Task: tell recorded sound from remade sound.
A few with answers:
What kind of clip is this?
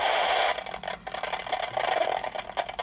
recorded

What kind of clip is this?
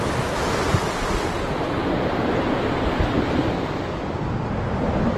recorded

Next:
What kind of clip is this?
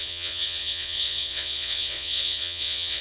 remade